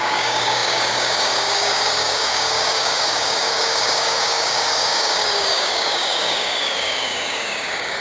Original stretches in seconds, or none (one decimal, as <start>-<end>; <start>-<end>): none